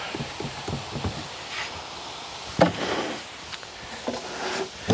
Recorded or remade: recorded